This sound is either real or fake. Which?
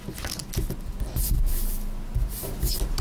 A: real